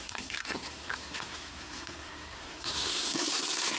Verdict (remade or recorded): remade